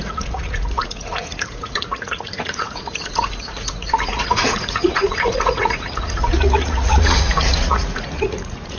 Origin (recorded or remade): remade